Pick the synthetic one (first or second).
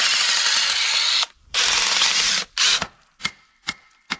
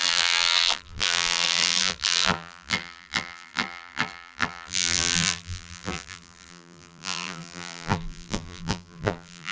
second